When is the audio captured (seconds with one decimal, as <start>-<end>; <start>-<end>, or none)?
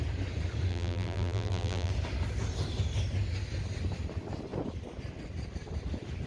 0.0-0.7; 1.9-6.3